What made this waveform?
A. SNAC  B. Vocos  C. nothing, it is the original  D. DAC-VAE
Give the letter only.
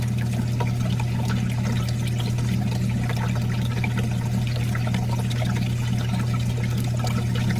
C